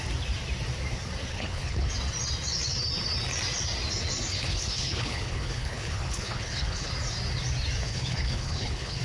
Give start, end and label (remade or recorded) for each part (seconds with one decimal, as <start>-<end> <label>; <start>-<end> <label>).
0.0-1.3 recorded; 1.3-1.9 remade; 1.9-4.3 recorded; 4.3-6.9 remade; 6.9-7.9 recorded; 7.9-9.0 remade